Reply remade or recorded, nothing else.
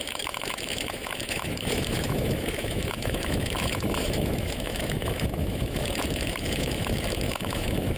remade